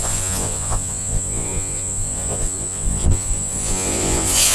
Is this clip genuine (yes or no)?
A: no